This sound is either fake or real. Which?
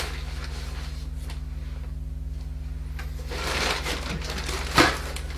real